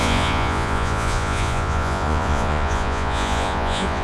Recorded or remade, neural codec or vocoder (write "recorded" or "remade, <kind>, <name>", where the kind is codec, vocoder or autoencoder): remade, vocoder, Vocos